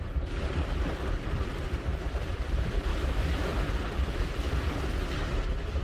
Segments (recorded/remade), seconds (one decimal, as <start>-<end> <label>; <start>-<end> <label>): 0.0-2.9 recorded; 2.9-3.7 remade; 3.7-5.8 recorded